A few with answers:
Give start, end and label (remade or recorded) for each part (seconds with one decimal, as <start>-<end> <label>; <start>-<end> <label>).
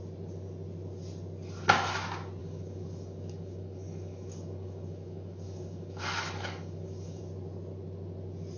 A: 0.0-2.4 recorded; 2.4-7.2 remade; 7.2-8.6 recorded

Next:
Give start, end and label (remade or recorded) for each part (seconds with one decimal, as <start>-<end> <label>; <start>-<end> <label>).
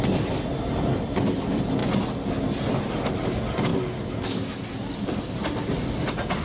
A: 0.0-6.4 recorded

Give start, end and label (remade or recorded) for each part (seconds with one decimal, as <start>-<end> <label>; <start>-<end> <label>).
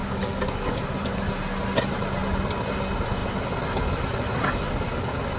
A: 0.0-0.8 remade; 0.8-5.4 recorded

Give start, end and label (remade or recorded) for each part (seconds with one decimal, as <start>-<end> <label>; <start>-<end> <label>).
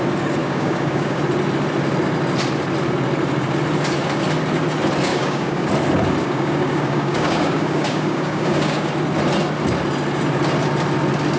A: 0.0-0.4 recorded; 0.4-1.2 remade; 1.2-5.1 recorded; 5.1-5.7 remade; 5.7-6.2 recorded; 6.2-8.9 remade; 8.9-11.4 recorded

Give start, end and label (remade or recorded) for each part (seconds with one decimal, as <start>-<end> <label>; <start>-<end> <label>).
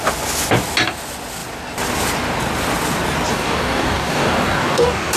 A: 0.0-3.3 recorded; 3.3-5.2 remade